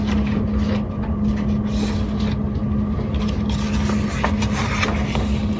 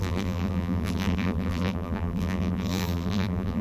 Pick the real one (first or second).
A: first